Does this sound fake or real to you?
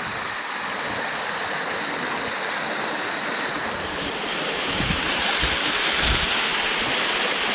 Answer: real